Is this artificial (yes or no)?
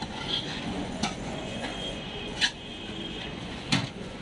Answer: yes